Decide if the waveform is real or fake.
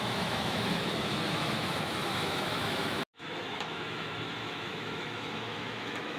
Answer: fake